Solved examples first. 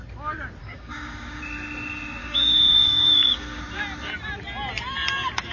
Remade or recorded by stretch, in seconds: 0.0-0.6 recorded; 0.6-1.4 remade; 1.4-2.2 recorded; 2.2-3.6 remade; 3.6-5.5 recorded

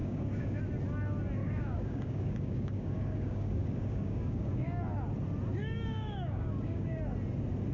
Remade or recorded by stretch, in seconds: 0.0-0.6 remade; 0.6-1.4 recorded; 1.4-4.8 remade; 4.8-5.6 recorded; 5.6-7.0 remade; 7.0-7.7 recorded

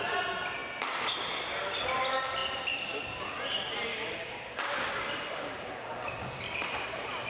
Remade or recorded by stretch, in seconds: 0.0-3.9 recorded; 3.9-4.9 remade; 4.9-7.3 recorded

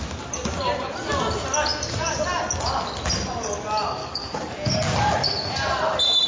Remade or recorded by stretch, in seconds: 0.0-4.0 recorded; 4.0-4.5 remade; 4.5-6.3 recorded

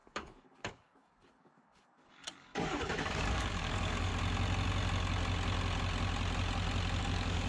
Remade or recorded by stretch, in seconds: 0.0-4.1 remade; 4.1-7.0 recorded; 7.0-7.5 remade

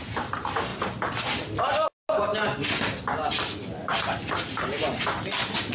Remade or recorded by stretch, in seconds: 0.0-5.7 recorded

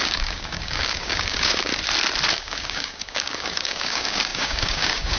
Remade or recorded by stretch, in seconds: 0.0-1.7 remade; 1.7-2.3 recorded; 2.3-5.2 remade

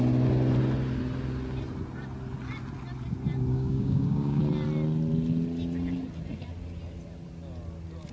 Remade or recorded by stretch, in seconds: 0.0-3.5 recorded; 3.5-4.4 remade; 4.4-8.1 recorded